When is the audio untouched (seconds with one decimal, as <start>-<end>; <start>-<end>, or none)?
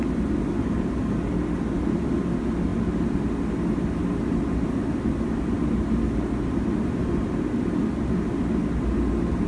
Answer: 0.0-9.5